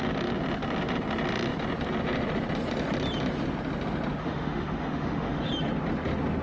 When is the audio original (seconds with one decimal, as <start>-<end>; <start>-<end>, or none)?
0.0-4.2; 5.5-6.4